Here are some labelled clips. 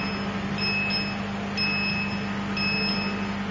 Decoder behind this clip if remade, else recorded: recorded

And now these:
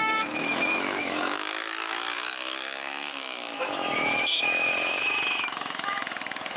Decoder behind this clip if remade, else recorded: remade, autoencoder, DAC-VAE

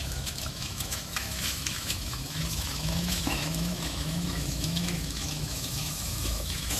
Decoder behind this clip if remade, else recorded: remade, autoencoder, DAC-VAE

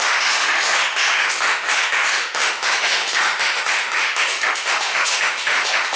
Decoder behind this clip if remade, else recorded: remade, autoencoder, DAC-VAE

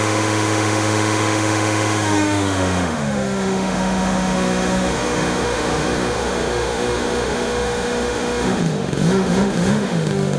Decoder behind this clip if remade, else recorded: remade, autoencoder, DAC-VAE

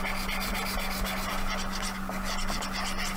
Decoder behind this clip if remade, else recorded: recorded